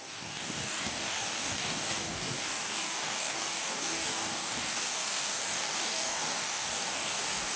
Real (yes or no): no